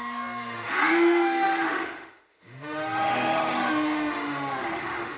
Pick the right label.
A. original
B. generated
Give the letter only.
B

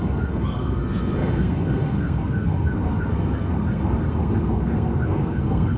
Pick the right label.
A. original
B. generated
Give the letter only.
B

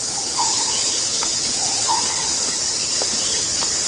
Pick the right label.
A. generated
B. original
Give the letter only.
A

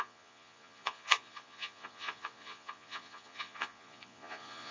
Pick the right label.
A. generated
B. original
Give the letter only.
A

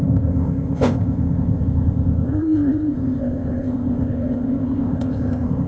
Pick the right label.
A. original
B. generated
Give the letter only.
B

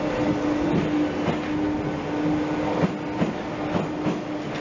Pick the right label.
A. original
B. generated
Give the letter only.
A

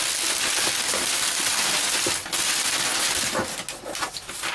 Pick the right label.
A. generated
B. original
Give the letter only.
B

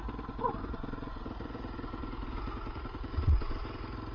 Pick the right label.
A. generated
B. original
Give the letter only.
A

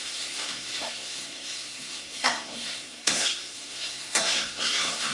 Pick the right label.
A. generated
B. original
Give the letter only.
A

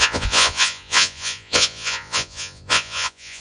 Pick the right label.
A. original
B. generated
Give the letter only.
B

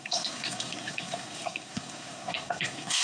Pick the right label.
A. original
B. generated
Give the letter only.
B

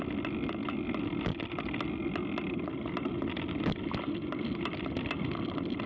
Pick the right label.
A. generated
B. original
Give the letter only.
B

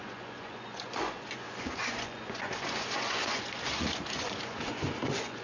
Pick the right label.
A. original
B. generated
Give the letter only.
B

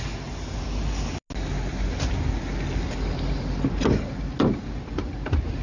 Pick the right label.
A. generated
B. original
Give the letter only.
B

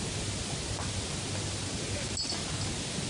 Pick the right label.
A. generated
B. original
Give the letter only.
B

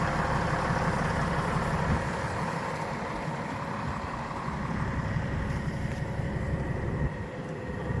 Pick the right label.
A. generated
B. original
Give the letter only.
B